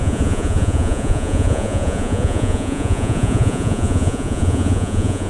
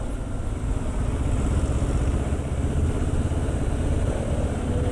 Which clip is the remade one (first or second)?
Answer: first